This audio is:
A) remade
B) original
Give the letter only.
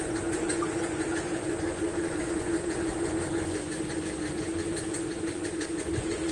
A